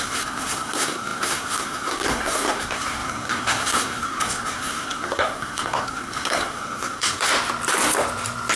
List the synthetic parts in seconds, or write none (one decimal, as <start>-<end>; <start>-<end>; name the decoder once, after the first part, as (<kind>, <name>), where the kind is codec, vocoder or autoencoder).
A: 0.0-7.3 (codec, SNAC)